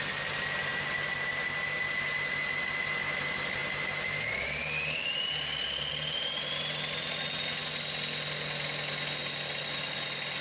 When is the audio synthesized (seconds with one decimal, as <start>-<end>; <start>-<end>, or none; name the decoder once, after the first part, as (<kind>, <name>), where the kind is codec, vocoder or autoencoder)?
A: none